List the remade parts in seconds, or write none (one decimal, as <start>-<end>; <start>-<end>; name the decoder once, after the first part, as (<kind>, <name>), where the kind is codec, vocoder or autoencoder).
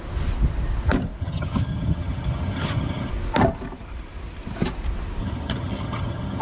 1.2-3.1 (vocoder, HiFi-GAN); 5.2-6.4